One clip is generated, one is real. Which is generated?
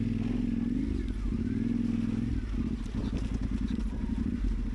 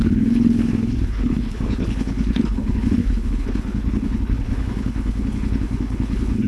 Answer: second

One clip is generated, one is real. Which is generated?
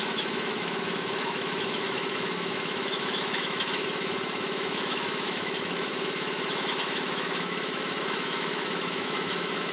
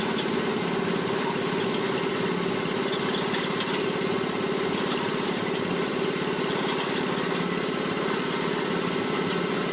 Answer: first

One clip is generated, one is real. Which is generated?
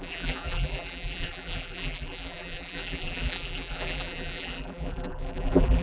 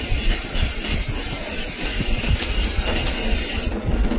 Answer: first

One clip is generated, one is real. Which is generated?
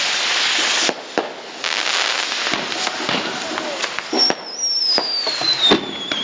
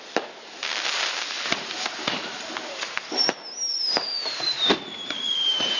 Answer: second